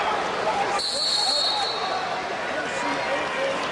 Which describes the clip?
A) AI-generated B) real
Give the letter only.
B